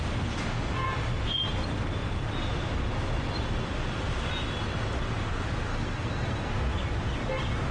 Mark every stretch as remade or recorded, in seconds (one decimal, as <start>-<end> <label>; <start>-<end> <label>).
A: 0.0-5.7 recorded; 5.7-6.5 remade; 6.5-7.7 recorded